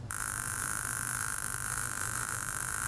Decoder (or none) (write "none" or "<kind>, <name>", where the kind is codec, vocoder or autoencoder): vocoder, BigVGAN v2